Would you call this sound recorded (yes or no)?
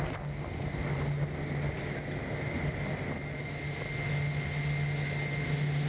yes